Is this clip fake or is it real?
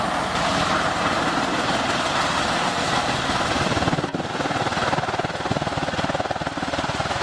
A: real